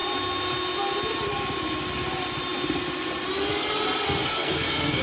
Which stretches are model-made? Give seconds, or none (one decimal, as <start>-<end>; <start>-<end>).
4.2-5.0